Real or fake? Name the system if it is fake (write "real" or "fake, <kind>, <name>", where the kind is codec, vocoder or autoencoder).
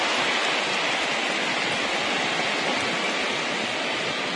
real